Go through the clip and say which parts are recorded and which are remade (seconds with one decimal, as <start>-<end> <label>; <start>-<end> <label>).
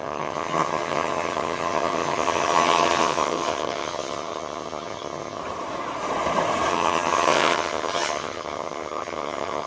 0.0-5.4 remade; 5.4-6.7 recorded; 6.7-9.7 remade